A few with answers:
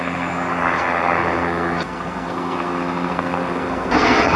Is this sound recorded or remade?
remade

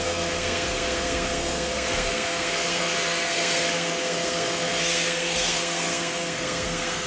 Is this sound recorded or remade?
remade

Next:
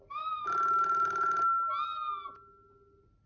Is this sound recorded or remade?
recorded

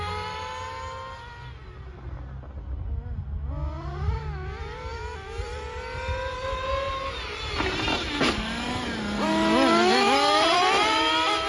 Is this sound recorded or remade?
recorded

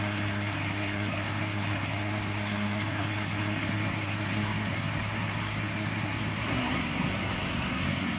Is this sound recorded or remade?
remade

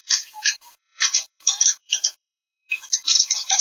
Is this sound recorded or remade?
remade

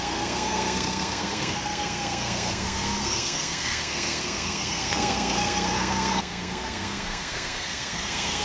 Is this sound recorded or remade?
remade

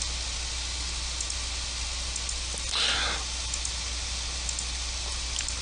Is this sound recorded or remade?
recorded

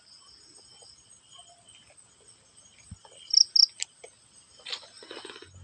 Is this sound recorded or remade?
recorded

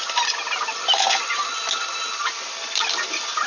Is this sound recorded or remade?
recorded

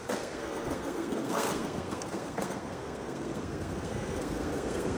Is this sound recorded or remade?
remade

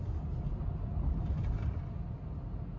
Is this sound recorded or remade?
recorded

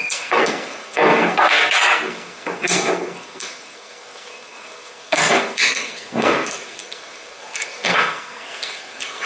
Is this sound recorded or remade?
remade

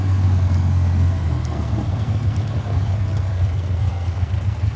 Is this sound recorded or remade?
remade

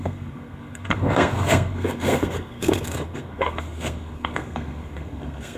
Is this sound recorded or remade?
remade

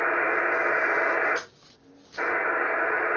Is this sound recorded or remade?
recorded